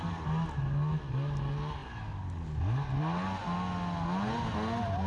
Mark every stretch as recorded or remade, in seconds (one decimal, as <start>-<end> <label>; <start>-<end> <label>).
0.0-5.1 recorded